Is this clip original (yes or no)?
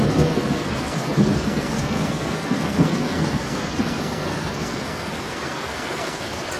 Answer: no